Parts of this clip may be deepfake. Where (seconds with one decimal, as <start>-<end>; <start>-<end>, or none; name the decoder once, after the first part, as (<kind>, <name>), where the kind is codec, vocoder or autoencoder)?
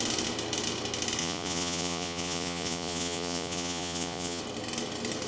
1.2-4.4 (vocoder, Vocos)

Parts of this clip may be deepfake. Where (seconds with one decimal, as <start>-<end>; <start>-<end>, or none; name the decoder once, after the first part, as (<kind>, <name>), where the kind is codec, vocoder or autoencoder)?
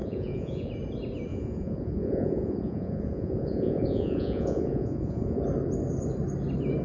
0.0-0.7 (vocoder, Vocos); 1.3-5.4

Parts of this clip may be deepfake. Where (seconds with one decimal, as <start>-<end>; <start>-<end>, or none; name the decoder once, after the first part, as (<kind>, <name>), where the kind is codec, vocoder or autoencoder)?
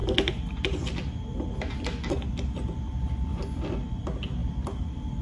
none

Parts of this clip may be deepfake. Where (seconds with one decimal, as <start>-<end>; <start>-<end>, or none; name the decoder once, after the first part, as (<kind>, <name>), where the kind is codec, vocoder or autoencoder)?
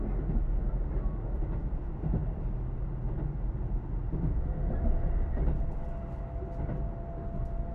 none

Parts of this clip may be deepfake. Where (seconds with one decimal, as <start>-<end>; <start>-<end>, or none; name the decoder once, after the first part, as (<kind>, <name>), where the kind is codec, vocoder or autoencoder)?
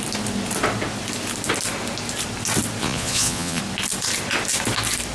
2.8-3.6 (vocoder, Vocos)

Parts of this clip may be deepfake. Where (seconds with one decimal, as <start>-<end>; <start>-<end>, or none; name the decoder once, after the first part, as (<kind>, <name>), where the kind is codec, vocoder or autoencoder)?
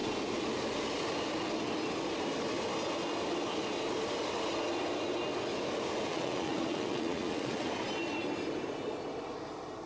6.1-7.7 (vocoder, Vocos)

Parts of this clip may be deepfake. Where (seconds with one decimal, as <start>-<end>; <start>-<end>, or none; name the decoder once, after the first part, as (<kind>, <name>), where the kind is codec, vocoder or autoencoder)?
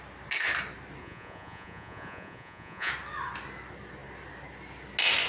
1.0-2.9 (vocoder, Vocos)